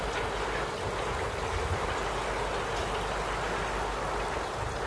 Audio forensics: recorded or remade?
recorded